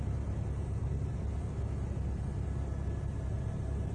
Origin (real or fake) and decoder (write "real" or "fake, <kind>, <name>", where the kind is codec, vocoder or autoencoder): real